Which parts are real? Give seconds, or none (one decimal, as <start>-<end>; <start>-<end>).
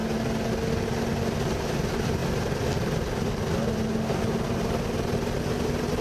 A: 0.0-6.0